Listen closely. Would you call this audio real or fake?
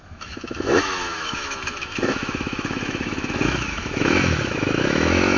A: fake